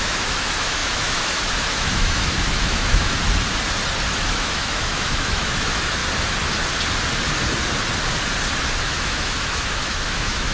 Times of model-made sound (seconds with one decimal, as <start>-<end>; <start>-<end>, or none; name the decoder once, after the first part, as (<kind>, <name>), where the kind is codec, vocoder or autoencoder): 0.0-3.2 (autoencoder, DAC-VAE); 4.1-6.0; 8.8-10.5